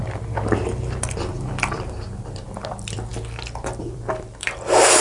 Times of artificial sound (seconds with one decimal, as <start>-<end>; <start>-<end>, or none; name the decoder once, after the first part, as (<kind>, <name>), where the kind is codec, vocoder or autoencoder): 0.6-3.1 (vocoder, BigVGAN v2); 3.8-5.0

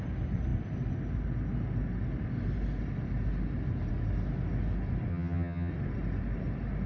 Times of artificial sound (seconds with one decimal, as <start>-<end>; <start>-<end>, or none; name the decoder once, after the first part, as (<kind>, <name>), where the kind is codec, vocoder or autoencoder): 5.1-5.7 (vocoder, HiFi-GAN)

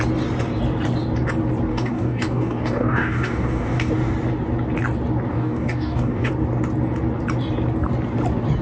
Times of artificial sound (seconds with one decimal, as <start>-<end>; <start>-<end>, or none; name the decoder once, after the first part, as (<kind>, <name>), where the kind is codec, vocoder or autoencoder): 1.7-3.9 (codec, DAC); 5.3-6.3

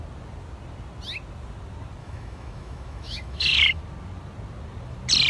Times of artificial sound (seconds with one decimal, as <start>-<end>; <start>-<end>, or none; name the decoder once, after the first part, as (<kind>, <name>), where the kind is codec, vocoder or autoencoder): 2.0-3.8 (autoencoder, DAC-VAE)

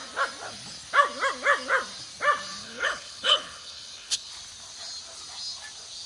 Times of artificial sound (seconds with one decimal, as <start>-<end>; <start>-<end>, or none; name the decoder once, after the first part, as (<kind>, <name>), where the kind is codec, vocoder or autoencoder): 2.6-4.3 (codec, HILCodec)